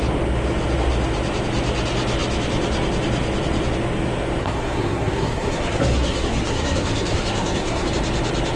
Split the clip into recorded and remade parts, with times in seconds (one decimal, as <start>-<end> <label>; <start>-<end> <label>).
0.0-4.4 recorded; 4.4-7.9 remade; 7.9-8.6 recorded